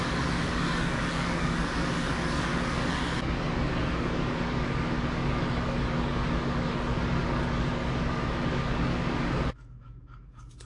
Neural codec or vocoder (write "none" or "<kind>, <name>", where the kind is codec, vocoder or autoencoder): codec, DAC